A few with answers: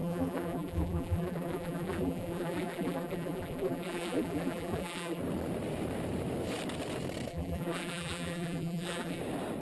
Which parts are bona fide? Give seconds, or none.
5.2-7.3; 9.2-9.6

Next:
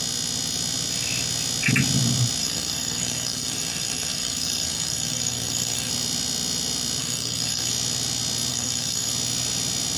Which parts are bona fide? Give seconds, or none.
0.0-2.4; 5.9-7.0; 7.7-8.5; 9.1-10.0

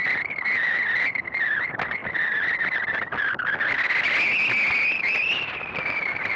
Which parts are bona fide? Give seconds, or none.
0.0-6.4

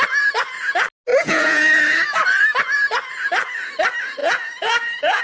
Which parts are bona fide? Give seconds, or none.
0.0-1.1; 1.8-4.2

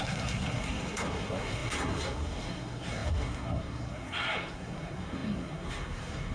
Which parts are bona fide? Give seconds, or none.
none

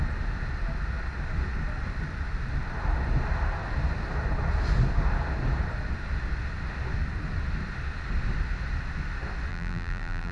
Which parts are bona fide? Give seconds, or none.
0.0-9.5

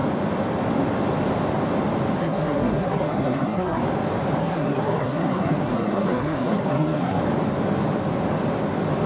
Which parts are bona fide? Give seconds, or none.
0.0-2.2; 3.8-4.4; 7.2-9.1

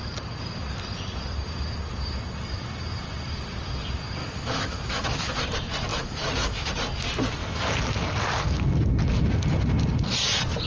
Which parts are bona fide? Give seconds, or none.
0.0-4.2; 5.4-5.9; 6.7-10.7